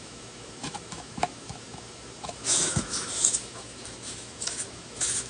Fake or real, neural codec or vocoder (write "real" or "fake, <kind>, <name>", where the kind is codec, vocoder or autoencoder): fake, autoencoder, DAC-VAE